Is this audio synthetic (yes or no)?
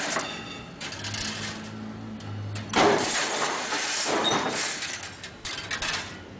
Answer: no